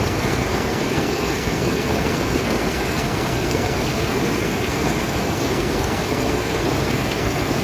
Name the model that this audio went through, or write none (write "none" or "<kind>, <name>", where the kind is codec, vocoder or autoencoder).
codec, SNAC